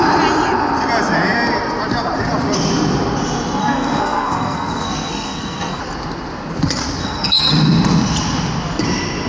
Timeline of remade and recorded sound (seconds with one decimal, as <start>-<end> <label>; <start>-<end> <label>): 0.0-3.6 recorded; 3.6-5.8 remade; 5.8-7.0 recorded; 7.0-7.5 remade; 7.5-9.3 recorded